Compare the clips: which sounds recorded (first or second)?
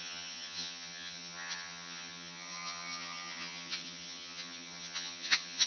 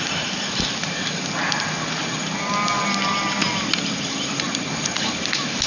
second